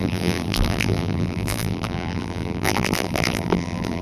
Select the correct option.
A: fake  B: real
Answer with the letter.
A